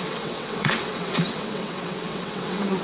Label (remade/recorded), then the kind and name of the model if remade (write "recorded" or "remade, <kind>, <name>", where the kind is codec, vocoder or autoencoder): remade, vocoder, WaveNeXt